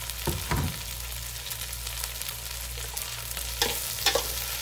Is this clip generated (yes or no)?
no